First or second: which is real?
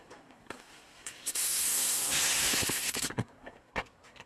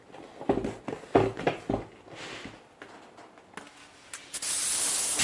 second